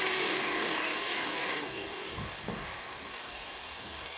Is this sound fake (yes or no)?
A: yes